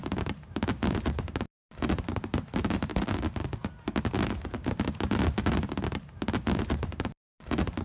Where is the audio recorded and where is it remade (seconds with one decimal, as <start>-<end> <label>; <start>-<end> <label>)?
0.0-2.9 remade; 2.9-6.4 recorded; 6.4-7.8 remade